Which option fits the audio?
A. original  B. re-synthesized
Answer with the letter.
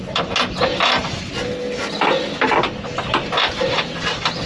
A